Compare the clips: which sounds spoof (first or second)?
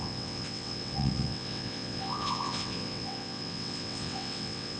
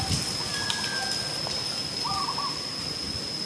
first